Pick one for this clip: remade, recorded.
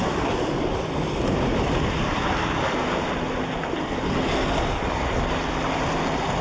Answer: recorded